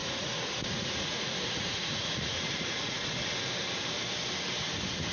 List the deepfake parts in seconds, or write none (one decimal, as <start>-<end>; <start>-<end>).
0.0-3.1